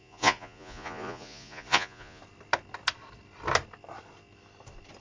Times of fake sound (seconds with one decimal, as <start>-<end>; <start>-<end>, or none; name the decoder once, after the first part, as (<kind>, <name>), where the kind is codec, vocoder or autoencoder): 0.0-2.2 (vocoder, Vocos)